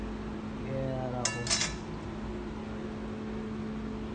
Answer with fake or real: real